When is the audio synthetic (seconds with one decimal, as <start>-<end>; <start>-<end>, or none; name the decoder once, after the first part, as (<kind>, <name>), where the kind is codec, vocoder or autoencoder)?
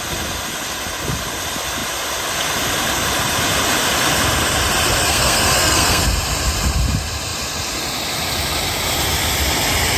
5.1-6.0 (codec, SNAC)